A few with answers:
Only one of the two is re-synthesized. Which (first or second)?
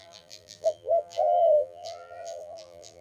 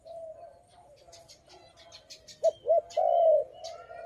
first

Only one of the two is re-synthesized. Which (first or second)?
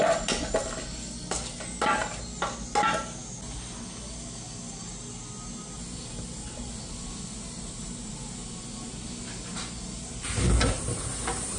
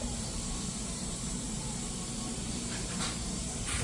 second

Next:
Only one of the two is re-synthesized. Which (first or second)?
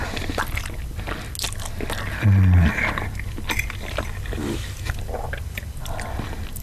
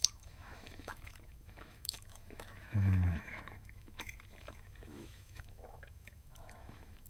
second